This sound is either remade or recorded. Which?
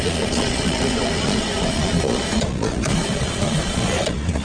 remade